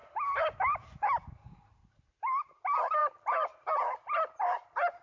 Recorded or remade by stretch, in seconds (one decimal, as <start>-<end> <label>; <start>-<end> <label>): 0.0-5.0 recorded